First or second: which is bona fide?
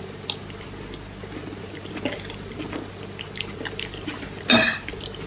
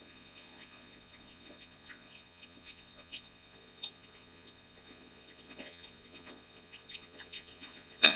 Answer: first